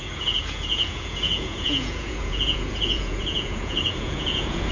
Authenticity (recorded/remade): remade